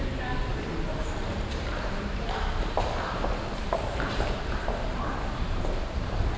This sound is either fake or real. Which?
fake